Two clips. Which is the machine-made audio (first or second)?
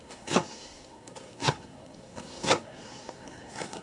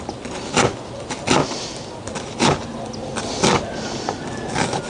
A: first